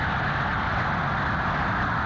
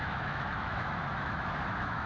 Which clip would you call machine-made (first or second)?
second